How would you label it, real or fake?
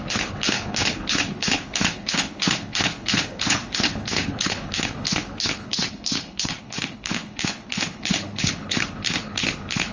fake